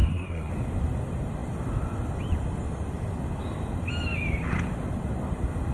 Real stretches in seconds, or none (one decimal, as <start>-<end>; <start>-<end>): 0.5-5.7